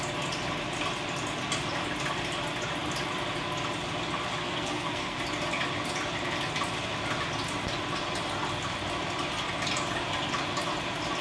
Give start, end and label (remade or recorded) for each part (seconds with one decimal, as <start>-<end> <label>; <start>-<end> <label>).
0.0-4.4 recorded; 4.4-5.2 remade; 5.2-11.2 recorded